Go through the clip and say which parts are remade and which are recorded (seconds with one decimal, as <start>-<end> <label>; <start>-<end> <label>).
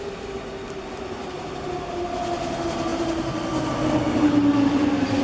0.0-5.2 recorded